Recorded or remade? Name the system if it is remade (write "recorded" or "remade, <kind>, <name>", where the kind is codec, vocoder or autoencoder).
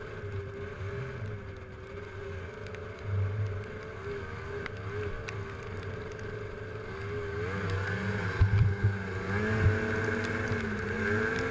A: recorded